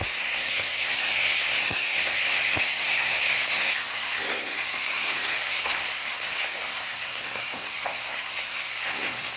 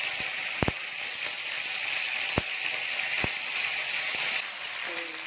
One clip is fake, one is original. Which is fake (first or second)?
first